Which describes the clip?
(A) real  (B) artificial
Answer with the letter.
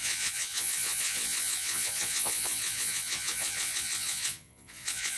B